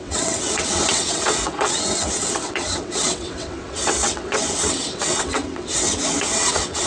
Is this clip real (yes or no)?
no